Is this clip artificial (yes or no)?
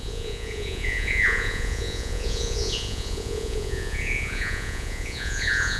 yes